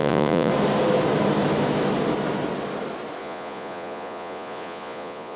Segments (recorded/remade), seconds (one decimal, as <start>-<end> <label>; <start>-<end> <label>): 0.0-0.5 remade; 0.5-3.2 recorded; 3.2-5.4 remade